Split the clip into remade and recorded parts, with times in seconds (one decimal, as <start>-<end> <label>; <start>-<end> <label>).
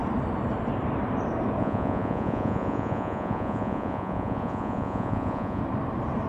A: 0.0-1.6 recorded; 1.6-5.6 remade; 5.6-6.3 recorded